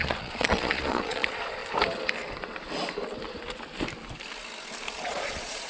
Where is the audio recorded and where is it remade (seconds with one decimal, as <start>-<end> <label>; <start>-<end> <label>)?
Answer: 0.0-1.6 remade; 1.6-5.0 recorded; 5.0-5.7 remade